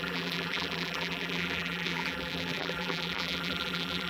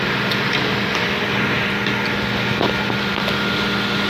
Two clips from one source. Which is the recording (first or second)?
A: second